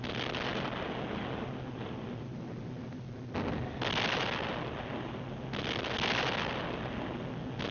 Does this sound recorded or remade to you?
recorded